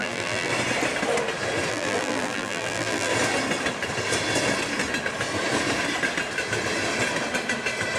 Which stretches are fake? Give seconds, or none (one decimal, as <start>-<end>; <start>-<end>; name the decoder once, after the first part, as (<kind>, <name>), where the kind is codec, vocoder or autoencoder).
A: 0.0-0.5 (vocoder, BigVGAN v2); 1.7-3.1